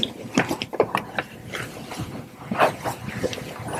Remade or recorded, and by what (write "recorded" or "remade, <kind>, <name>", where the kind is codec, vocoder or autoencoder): remade, vocoder, BigVGAN v2